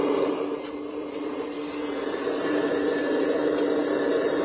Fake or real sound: fake